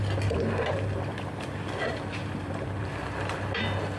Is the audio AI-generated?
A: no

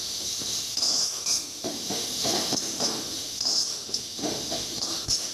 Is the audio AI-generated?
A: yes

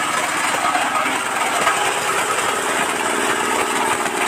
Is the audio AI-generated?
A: no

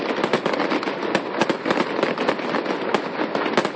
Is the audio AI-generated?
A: no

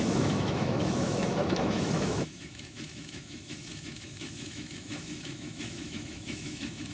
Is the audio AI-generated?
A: yes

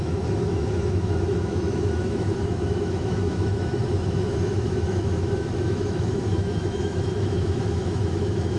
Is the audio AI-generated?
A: yes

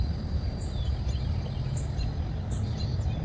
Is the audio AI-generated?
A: no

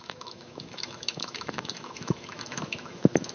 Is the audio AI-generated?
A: yes